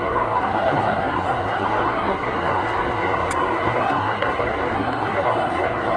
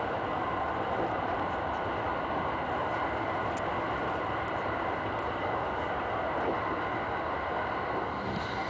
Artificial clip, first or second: first